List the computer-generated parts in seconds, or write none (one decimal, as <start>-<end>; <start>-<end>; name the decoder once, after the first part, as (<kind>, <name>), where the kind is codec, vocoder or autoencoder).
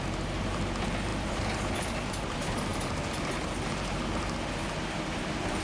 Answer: none